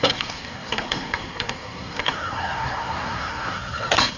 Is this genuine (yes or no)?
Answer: no